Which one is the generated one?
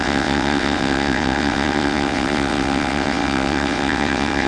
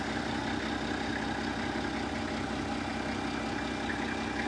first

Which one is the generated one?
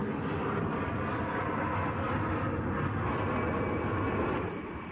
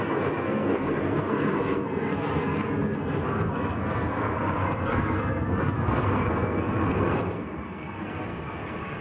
second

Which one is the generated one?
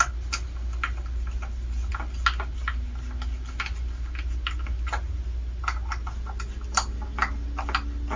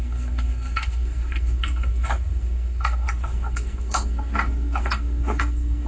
second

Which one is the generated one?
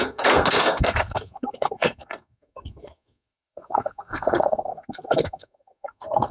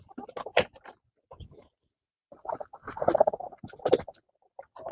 first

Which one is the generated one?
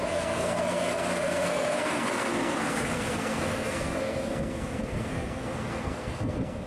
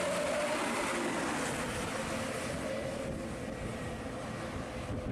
first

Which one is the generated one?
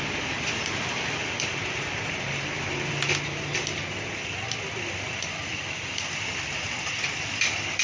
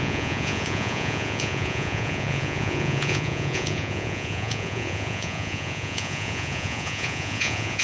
second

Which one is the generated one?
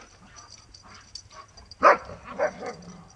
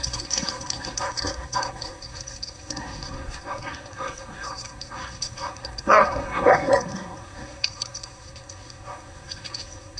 second